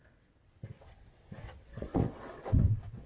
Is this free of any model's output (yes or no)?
no